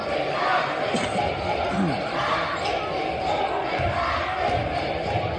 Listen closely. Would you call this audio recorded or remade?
recorded